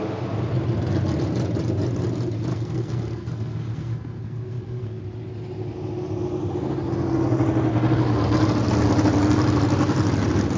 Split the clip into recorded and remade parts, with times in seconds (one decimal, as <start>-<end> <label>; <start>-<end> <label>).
0.0-2.5 recorded; 2.5-5.0 remade; 5.0-10.6 recorded